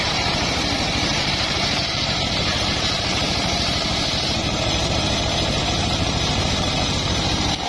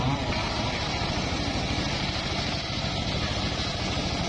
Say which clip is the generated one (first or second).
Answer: first